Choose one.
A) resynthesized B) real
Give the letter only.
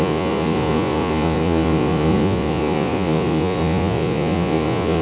A